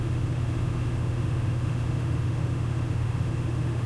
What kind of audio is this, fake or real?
fake